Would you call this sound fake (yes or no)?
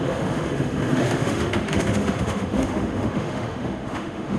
yes